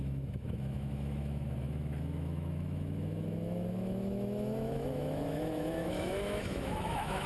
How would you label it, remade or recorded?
remade